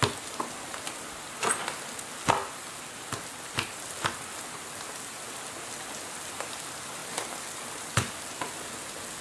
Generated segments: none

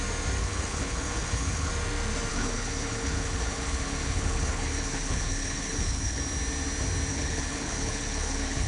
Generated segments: 0.4-1.7 (codec, HILCodec); 2.3-6.2; 7.1-8.7

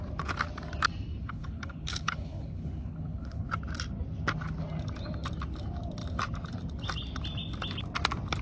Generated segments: 1.2-3.5 (codec, HILCodec)

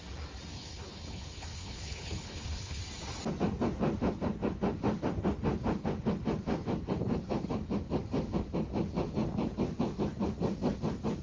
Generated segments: 0.5-2.8 (codec, HILCodec)

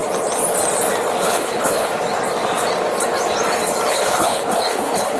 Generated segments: 1.2-1.9 (codec, HILCodec); 3.9-5.2

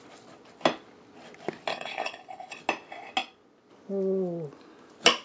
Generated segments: 1.7-2.6 (codec, HILCodec)